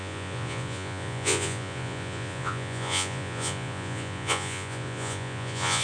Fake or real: fake